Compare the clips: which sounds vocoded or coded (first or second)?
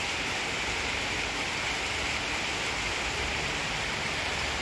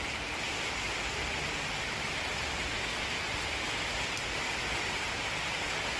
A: first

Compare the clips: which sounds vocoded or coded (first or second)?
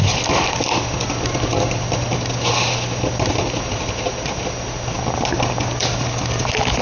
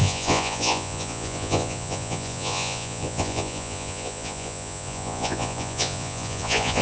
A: second